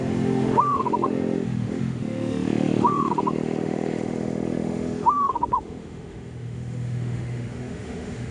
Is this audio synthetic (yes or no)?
yes